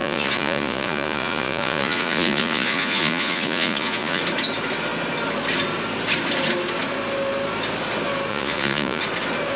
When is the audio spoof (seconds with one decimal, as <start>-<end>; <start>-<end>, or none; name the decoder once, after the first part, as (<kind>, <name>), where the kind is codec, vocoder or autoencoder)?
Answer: 0.0-4.2 (vocoder, Vocos); 8.3-9.0